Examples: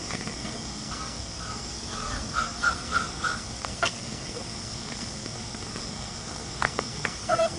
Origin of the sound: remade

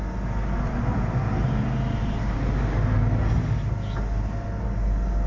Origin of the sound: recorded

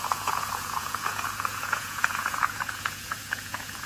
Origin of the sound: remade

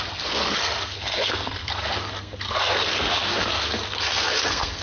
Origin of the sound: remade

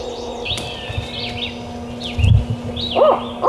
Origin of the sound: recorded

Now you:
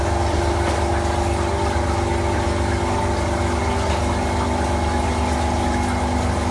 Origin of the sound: recorded